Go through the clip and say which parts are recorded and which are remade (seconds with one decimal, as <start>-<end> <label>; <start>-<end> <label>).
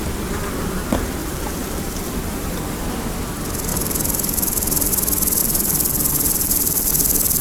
0.0-1.2 recorded; 1.2-2.8 remade; 2.8-3.7 recorded; 3.7-4.9 remade; 4.9-5.4 recorded; 5.4-6.9 remade; 6.9-7.4 recorded